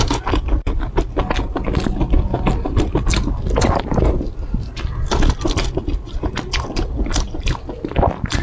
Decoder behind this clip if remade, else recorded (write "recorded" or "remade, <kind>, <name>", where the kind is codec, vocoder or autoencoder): recorded